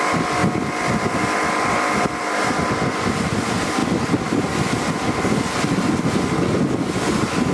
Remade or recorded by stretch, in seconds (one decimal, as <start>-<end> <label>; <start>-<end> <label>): 0.0-7.5 recorded